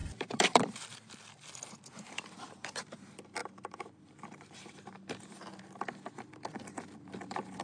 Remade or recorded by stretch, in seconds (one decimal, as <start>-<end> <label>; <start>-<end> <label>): 0.0-7.6 remade